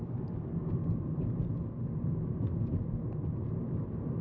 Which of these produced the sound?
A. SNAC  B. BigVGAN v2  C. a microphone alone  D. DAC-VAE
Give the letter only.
C